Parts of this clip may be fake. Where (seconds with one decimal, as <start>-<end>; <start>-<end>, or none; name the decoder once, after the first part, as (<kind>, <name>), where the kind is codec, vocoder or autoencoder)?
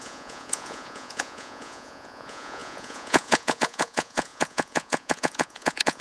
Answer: 0.0-6.0 (vocoder, Vocos)